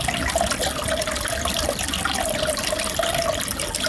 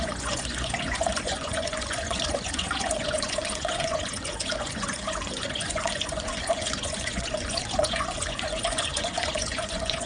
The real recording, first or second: first